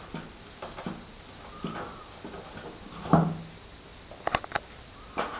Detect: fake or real real